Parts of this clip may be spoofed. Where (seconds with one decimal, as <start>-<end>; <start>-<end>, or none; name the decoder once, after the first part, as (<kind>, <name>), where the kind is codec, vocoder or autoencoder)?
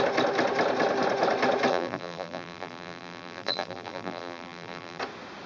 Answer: 1.7-5.0 (vocoder, BigVGAN v2)